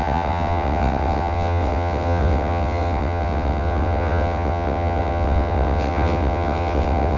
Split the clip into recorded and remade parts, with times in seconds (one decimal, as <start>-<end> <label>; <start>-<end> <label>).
0.0-7.2 remade